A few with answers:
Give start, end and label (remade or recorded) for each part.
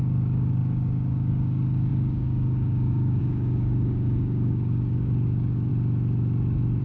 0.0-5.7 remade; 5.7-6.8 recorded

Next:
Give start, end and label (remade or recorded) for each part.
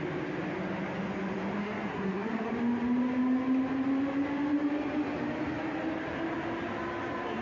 0.0-1.6 recorded; 1.6-2.5 remade; 2.5-7.4 recorded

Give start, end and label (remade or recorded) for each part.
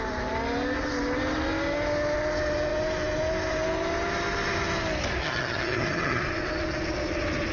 0.0-5.2 recorded; 5.2-6.2 remade; 6.2-7.5 recorded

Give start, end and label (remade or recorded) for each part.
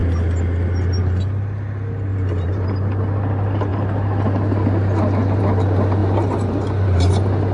0.0-2.1 recorded; 2.1-2.7 remade; 2.7-6.0 recorded; 6.0-7.1 remade; 7.1-7.5 recorded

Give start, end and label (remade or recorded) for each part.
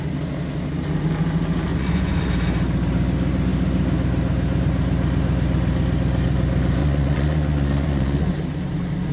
0.0-1.7 recorded; 1.7-2.3 remade; 2.3-6.8 recorded; 6.8-8.3 remade; 8.3-9.1 recorded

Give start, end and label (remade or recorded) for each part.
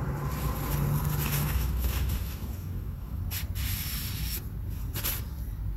0.0-1.3 recorded; 1.3-3.2 remade; 3.2-5.8 recorded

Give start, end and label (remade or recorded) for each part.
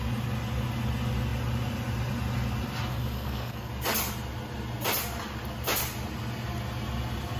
0.0-2.9 recorded; 2.9-3.7 remade; 3.7-7.4 recorded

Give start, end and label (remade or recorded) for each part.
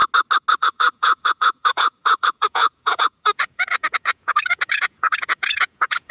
0.0-0.6 recorded; 0.6-6.1 remade